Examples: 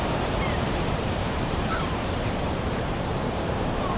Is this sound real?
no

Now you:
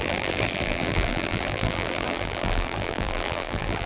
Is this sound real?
no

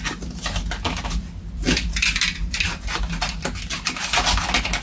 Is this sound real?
yes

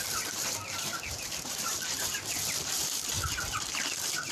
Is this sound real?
no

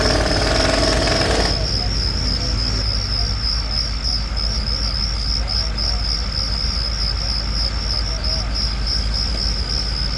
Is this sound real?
yes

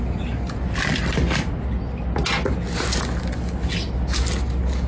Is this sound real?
yes